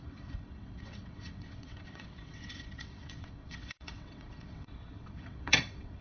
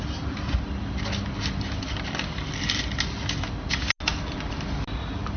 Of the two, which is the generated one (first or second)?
first